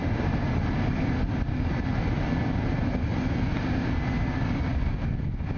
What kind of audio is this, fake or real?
real